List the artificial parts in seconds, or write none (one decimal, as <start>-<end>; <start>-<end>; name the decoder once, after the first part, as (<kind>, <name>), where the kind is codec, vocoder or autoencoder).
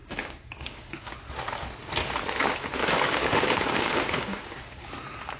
0.0-1.1 (codec, DAC); 2.8-4.9